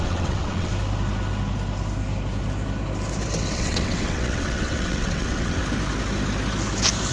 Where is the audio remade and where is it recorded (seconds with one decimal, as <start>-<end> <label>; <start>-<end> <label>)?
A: 0.0-0.7 remade; 0.7-3.5 recorded; 3.5-5.6 remade; 5.6-7.1 recorded